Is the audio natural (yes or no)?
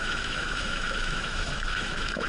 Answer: no